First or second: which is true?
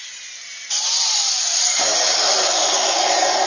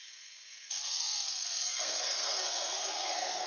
first